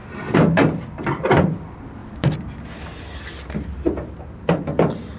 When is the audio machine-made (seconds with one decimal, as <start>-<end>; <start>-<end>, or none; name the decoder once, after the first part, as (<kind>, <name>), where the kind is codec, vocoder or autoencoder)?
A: 0.0-2.0 (vocoder, BigVGAN v2)